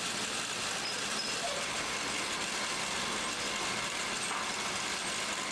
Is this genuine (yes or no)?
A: yes